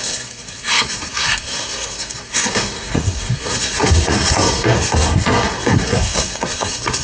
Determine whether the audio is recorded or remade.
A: remade